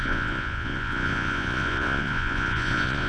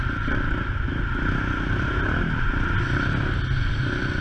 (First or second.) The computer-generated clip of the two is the first